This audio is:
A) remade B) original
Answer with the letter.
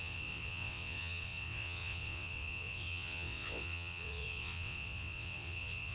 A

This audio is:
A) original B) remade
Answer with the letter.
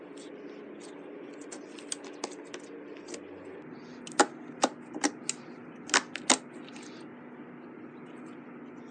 A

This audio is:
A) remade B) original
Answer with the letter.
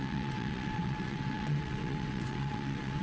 A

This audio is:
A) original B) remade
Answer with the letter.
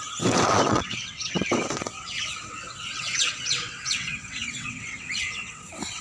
B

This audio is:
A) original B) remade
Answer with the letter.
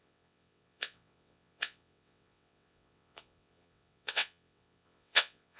B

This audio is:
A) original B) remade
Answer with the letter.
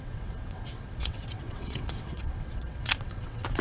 B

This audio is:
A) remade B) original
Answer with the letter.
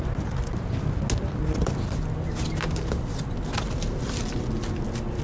B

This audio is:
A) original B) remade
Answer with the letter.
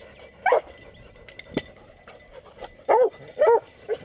A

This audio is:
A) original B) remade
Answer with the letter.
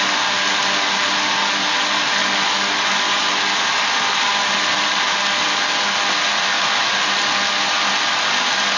A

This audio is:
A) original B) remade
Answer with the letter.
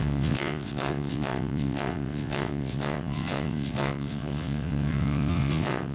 B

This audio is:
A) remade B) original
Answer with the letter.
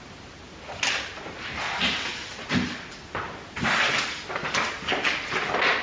B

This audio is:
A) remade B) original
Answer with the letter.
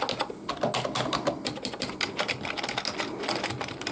B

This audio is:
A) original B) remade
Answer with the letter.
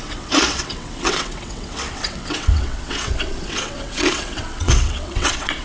B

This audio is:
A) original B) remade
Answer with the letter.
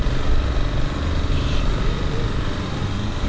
A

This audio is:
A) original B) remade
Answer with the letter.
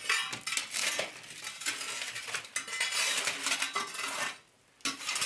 A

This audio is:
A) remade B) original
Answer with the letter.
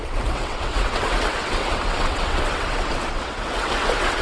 A